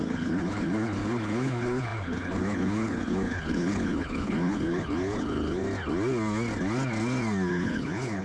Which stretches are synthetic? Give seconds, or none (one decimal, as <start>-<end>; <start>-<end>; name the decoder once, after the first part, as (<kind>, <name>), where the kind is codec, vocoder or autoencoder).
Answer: 0.0-5.6 (codec, HILCodec); 7.5-8.2